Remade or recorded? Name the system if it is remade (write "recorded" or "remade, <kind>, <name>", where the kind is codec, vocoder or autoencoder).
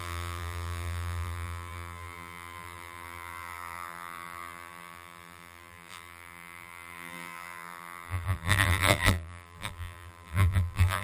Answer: remade, vocoder, BigVGAN v2